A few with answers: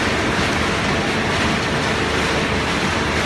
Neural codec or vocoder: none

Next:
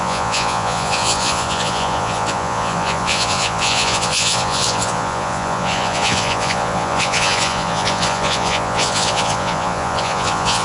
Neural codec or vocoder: vocoder, Vocos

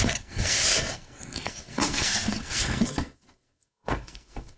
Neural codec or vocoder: codec, SNAC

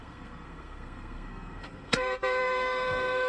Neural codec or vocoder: codec, SNAC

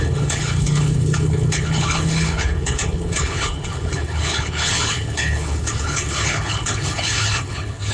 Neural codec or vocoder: codec, HILCodec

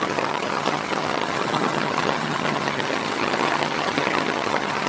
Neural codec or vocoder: vocoder, HiFi-GAN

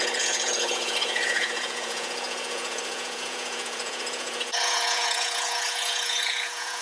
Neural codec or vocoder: vocoder, Vocos